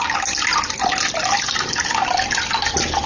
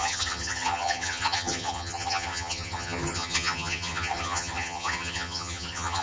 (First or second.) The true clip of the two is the first